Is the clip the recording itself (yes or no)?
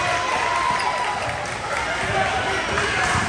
yes